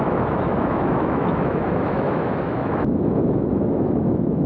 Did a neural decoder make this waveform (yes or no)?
yes